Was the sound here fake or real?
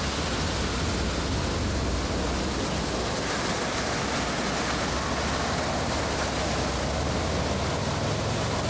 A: real